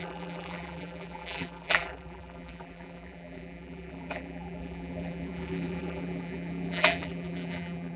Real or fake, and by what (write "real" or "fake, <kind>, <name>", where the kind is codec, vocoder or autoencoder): fake, vocoder, BigVGAN v2